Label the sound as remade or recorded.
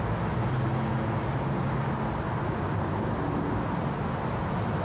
recorded